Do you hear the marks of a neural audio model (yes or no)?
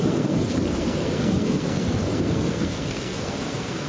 yes